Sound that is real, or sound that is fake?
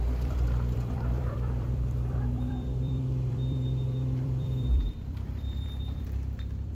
fake